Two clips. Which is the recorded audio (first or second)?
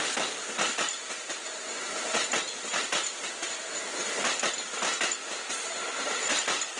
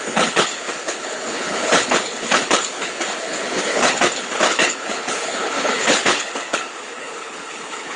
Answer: first